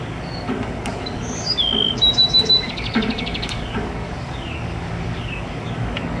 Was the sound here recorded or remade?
remade